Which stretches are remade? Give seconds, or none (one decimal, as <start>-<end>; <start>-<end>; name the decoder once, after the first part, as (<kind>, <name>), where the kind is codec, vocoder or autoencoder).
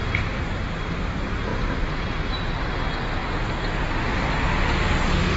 none